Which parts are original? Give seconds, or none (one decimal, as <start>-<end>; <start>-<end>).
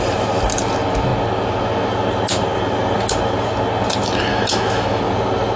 0.0-4.3; 5.0-5.6